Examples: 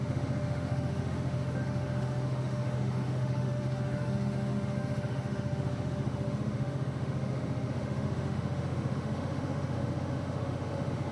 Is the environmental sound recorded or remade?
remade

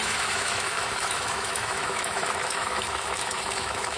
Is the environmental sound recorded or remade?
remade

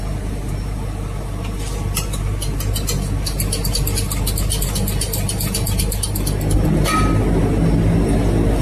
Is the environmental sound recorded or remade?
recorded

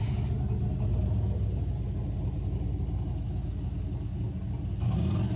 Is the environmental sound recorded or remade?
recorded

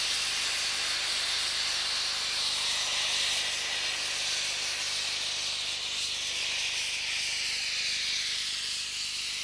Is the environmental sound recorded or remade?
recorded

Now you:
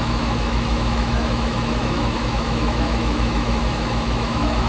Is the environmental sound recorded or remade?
remade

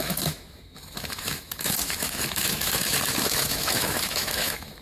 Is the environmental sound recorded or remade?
remade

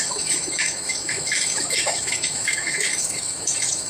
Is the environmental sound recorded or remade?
remade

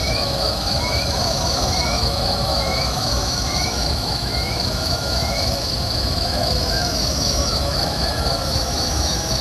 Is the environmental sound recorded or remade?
remade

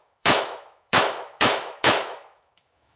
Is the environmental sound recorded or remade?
remade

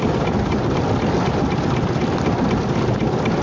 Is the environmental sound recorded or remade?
recorded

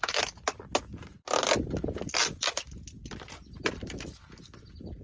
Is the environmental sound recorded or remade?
recorded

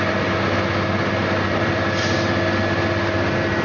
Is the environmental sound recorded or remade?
recorded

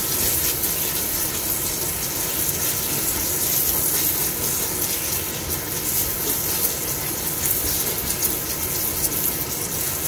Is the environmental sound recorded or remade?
recorded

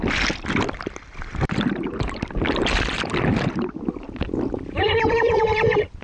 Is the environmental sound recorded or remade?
recorded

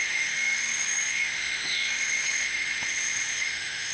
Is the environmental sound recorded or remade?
remade